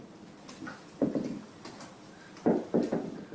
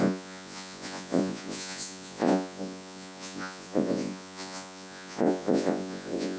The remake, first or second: second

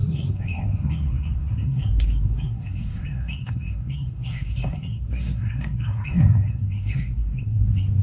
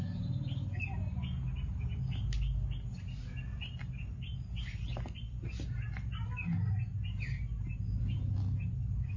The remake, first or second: first